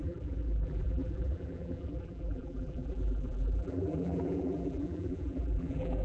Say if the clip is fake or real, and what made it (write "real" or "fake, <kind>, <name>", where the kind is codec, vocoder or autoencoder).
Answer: fake, vocoder, BigVGAN v2